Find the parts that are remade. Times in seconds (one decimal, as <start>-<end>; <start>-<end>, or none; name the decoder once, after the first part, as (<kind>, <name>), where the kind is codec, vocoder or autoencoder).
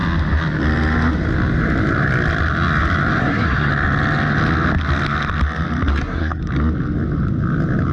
3.2-3.7 (codec, SNAC); 5.9-6.4